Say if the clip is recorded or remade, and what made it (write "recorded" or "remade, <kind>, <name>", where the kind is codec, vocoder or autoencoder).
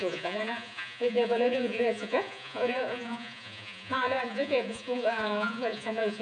remade, vocoder, Vocos